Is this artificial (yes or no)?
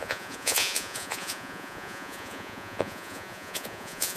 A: yes